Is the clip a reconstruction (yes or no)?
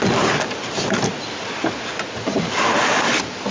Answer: no